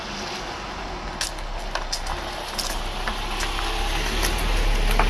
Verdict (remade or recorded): recorded